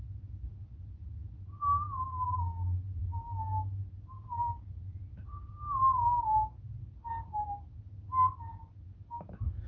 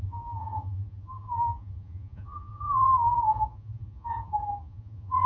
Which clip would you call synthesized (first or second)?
second